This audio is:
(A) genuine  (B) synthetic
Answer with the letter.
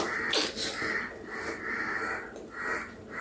B